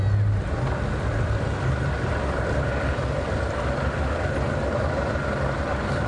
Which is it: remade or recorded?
recorded